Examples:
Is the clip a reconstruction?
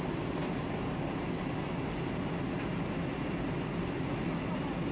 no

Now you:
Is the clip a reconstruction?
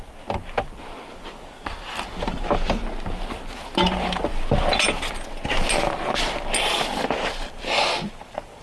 no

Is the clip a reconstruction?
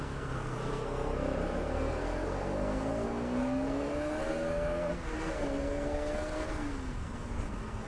yes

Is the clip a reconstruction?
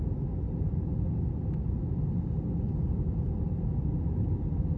no